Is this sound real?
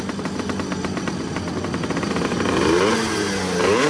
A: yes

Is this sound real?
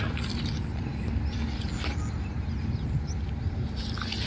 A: yes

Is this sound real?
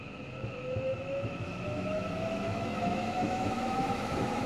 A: no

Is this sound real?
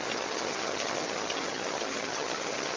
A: no